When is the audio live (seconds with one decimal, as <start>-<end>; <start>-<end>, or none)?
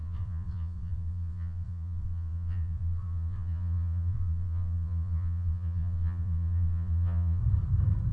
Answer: 7.4-8.1